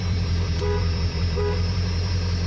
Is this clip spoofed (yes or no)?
yes